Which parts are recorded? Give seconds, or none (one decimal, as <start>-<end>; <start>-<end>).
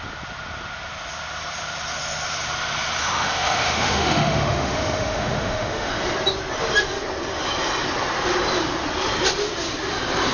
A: 0.0-3.0; 5.9-10.3